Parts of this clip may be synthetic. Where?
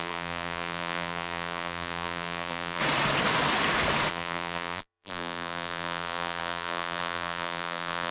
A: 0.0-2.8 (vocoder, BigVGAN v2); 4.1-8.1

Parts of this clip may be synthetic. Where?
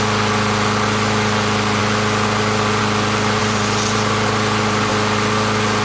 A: 3.4-4.9 (vocoder, BigVGAN v2)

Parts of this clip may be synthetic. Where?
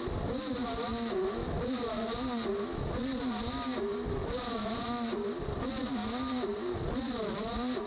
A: none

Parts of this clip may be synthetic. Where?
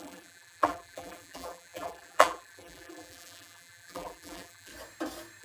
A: 0.0-4.7 (vocoder, BigVGAN v2)